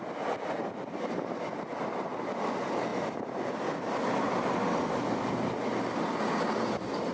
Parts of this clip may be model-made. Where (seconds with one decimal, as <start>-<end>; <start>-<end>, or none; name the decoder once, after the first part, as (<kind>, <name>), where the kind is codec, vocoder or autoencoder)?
none